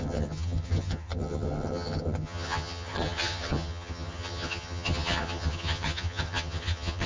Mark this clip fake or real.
fake